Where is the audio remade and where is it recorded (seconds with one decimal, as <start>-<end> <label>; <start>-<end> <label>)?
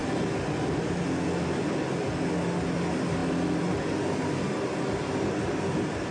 0.0-6.1 recorded